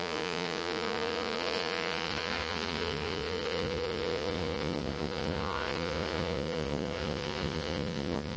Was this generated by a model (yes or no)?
yes